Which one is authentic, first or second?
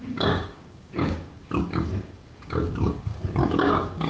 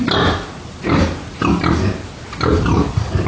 second